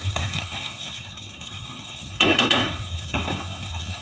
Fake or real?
fake